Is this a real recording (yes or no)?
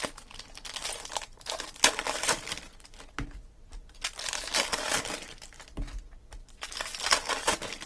yes